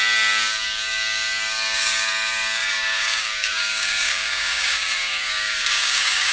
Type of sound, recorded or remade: remade